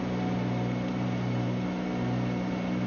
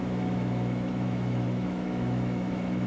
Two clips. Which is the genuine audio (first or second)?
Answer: first